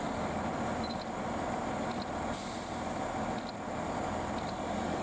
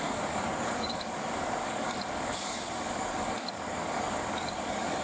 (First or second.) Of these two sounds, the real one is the first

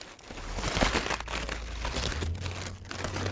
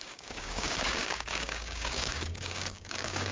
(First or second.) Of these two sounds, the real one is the first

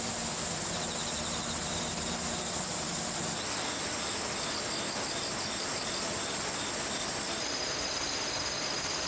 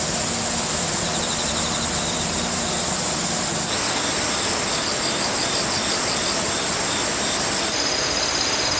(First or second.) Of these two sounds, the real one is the first